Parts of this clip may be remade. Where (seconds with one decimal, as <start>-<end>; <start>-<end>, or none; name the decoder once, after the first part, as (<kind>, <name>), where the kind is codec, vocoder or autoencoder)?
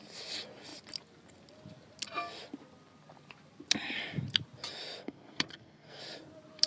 5.0-6.0 (codec, SNAC)